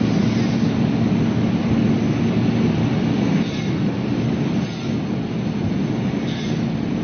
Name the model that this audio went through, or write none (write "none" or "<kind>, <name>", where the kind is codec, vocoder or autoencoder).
none